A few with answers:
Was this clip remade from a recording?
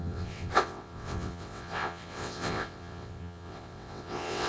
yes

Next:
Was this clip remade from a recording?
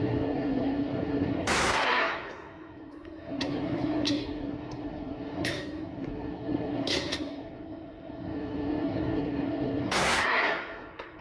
yes